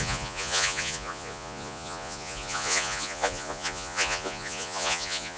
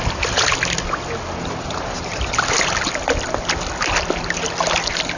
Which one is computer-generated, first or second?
first